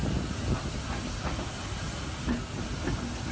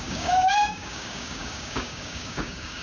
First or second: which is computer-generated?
second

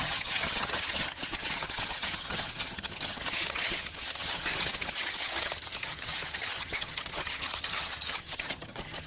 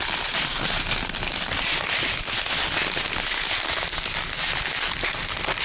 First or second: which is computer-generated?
first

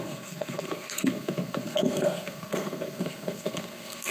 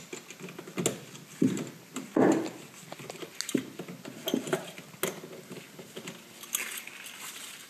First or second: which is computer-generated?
first